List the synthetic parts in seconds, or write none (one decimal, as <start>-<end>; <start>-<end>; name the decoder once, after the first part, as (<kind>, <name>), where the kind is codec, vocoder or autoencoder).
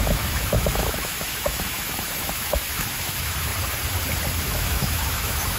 0.0-3.5 (autoencoder, DAC-VAE); 4.4-5.6